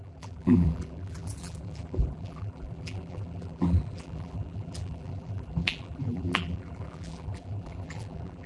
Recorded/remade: remade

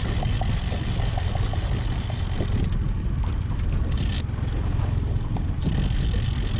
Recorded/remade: recorded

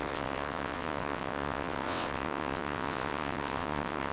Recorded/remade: remade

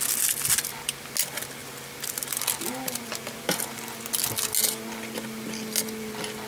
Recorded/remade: recorded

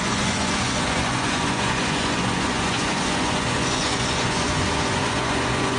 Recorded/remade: remade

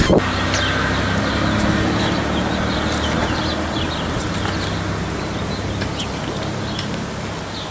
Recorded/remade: recorded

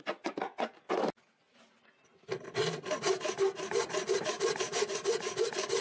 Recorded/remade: recorded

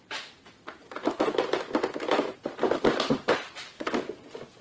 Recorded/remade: recorded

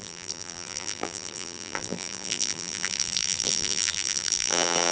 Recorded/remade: remade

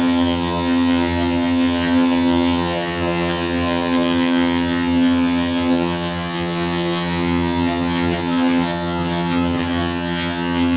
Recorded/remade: remade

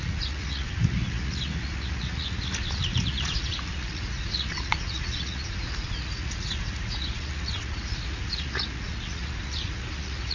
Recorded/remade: remade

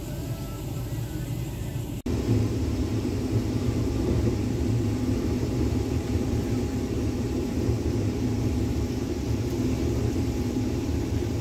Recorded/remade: remade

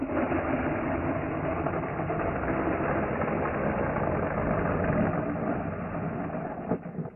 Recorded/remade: recorded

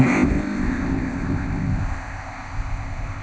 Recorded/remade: remade